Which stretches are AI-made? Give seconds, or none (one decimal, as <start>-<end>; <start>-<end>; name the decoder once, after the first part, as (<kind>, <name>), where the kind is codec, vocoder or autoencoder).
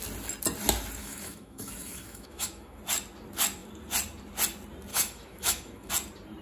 1.0-2.8 (autoencoder, DAC-VAE); 4.9-5.9